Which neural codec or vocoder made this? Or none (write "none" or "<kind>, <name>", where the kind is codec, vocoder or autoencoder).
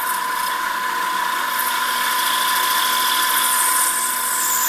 none